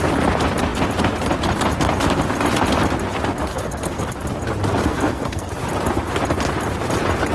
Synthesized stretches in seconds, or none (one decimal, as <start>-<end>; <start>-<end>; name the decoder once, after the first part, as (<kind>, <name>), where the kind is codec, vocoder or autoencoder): 3.5-4.1 (codec, SNAC); 4.8-5.5